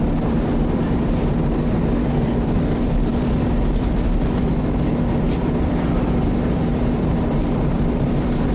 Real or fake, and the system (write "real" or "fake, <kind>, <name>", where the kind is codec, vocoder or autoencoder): fake, vocoder, BigVGAN v2